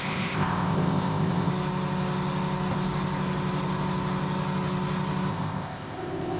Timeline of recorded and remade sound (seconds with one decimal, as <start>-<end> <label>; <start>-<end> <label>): 0.0-1.5 remade; 1.5-5.3 recorded; 5.3-6.4 remade